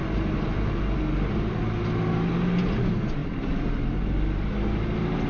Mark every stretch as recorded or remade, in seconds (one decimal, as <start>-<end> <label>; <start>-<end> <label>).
0.0-0.8 remade; 0.8-3.2 recorded; 3.2-4.5 remade; 4.5-5.3 recorded